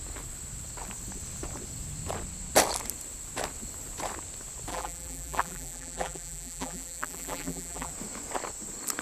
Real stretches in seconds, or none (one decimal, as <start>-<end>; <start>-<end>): 0.0-4.7; 7.9-9.0